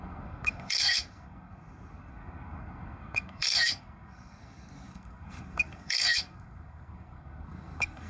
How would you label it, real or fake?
fake